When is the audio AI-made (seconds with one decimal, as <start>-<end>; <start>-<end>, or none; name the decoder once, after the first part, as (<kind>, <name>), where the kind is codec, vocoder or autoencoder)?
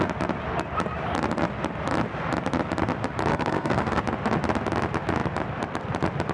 3.3-4.0 (codec, SNAC)